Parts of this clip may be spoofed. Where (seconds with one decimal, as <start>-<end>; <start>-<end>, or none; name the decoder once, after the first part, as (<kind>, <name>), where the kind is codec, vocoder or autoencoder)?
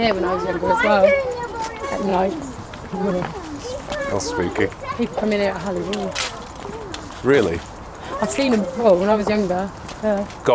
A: 2.1-3.1 (vocoder, BigVGAN v2); 7.2-10.0